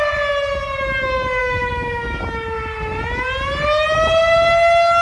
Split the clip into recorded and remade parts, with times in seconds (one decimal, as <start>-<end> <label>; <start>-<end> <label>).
0.0-1.4 recorded; 1.4-2.2 remade; 2.2-5.0 recorded